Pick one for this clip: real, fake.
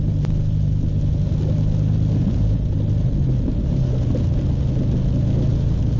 real